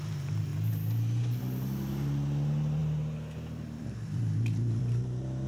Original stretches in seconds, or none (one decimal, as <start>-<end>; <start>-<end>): 0.0-2.8; 4.8-5.5